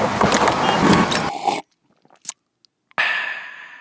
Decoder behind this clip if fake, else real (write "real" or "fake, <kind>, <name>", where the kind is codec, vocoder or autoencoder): real